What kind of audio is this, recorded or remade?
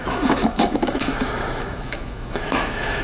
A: remade